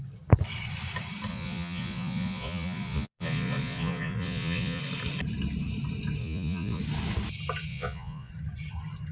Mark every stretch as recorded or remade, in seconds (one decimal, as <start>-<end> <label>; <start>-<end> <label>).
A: 0.0-1.3 recorded; 1.3-4.8 remade; 4.8-6.2 recorded; 6.2-6.8 remade; 6.8-7.7 recorded; 7.7-8.3 remade; 8.3-9.1 recorded